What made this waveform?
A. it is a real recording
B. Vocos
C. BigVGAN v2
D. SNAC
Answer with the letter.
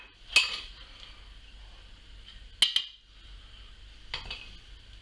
A